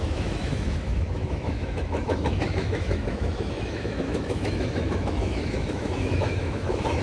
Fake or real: fake